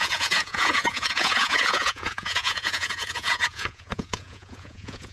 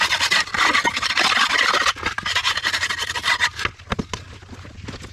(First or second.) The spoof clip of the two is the first